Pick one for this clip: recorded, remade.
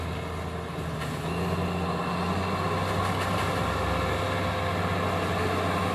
recorded